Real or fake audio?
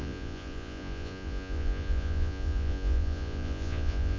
fake